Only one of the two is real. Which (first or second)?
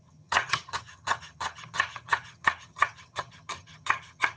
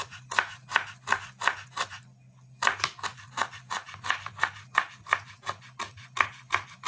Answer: second